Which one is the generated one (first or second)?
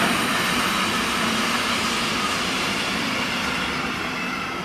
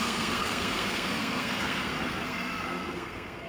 second